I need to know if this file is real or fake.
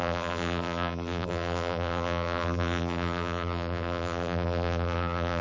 fake